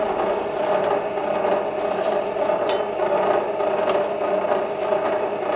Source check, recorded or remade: recorded